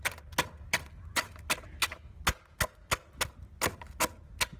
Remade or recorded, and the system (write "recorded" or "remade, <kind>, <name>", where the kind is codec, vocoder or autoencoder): recorded